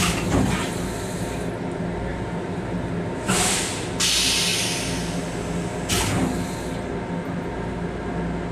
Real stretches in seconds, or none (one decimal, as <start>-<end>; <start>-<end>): 0.0-2.1; 2.9-8.5